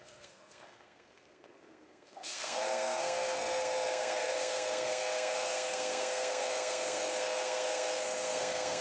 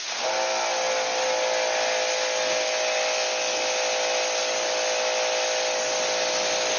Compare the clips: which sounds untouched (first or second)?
second